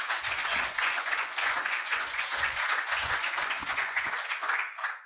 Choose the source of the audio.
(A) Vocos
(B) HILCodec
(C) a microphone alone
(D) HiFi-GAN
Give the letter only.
A